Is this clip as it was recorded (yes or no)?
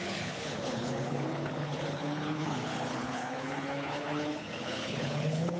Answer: no